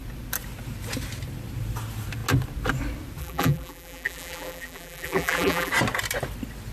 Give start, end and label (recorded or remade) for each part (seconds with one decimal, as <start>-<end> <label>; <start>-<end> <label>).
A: 0.0-3.2 recorded; 3.2-5.7 remade; 5.7-6.7 recorded